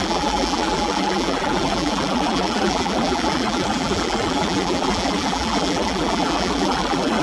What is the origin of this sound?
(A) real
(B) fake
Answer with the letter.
B